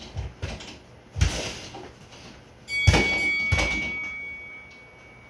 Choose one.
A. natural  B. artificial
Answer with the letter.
A